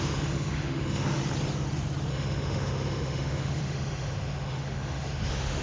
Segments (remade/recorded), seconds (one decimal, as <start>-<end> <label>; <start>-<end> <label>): 0.0-1.2 remade; 1.2-2.1 recorded; 2.1-5.6 remade